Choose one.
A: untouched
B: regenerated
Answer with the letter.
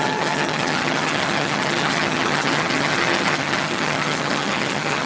B